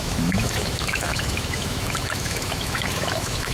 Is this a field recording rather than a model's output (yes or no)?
no